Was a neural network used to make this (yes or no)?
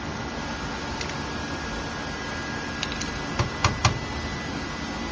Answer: no